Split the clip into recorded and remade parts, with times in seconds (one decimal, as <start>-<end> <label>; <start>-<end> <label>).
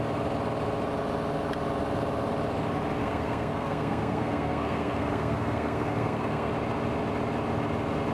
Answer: 0.0-3.0 recorded; 3.0-6.5 remade; 6.5-8.1 recorded